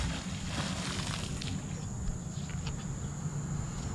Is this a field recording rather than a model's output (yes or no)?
yes